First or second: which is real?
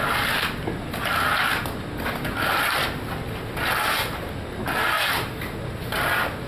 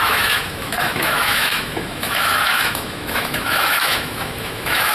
first